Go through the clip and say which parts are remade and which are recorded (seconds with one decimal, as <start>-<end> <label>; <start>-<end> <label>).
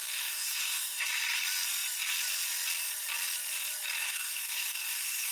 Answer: 0.0-1.1 remade; 1.1-4.0 recorded; 4.0-5.3 remade